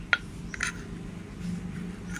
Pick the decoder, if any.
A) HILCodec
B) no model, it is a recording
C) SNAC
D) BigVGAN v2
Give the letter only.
B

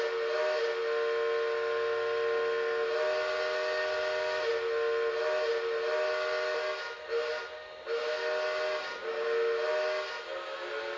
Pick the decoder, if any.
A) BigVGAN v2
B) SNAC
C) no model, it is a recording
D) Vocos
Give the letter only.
C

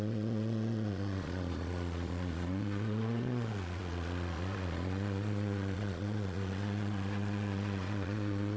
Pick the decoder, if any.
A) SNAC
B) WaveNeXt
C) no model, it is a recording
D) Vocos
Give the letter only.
D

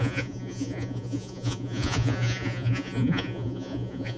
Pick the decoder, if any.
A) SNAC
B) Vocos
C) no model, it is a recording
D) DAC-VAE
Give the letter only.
B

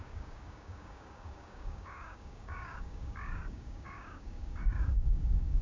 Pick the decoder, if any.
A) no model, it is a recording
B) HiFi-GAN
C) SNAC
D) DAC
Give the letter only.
D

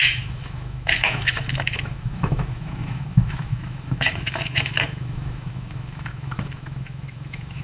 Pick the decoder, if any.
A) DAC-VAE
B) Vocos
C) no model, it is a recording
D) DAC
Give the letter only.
A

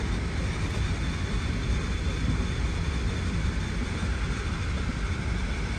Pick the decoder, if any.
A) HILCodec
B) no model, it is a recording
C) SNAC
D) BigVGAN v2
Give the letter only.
B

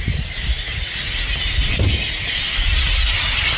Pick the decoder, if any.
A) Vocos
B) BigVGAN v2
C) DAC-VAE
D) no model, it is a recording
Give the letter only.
D